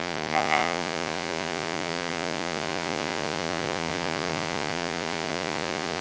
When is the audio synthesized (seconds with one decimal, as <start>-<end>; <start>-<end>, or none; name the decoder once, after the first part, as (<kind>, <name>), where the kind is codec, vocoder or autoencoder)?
0.0-6.0 (vocoder, Vocos)